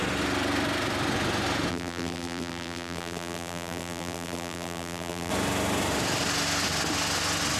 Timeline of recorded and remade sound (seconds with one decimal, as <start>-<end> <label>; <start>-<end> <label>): 0.0-1.7 recorded; 1.7-5.3 remade; 5.3-7.6 recorded